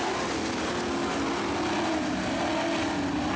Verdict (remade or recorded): recorded